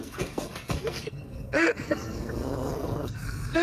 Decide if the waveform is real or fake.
fake